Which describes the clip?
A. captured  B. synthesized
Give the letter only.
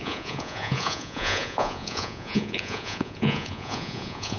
B